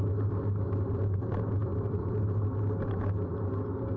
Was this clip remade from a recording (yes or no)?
no